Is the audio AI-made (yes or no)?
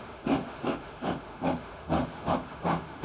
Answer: yes